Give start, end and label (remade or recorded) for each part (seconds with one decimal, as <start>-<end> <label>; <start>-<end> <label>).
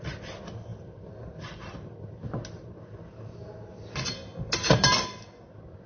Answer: 0.0-5.9 recorded